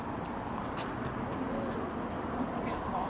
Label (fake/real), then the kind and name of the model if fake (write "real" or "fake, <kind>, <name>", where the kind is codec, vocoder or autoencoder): real